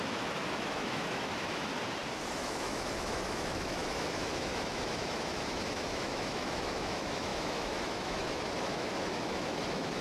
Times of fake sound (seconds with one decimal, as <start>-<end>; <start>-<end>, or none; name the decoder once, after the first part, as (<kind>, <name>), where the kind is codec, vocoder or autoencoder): 0.0-1.7 (autoencoder, DAC-VAE); 2.3-10.0